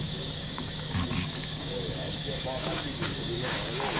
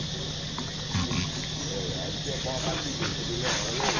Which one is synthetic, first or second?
first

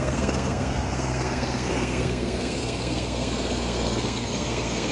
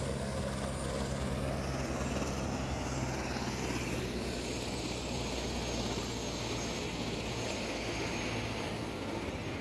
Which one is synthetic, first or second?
first